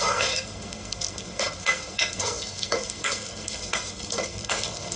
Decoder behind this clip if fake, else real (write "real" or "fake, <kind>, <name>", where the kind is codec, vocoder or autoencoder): fake, codec, SNAC